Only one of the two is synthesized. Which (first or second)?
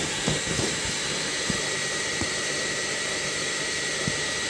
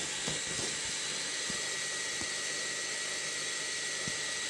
first